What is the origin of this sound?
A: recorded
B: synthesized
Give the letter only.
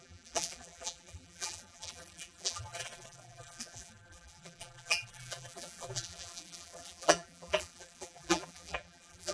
B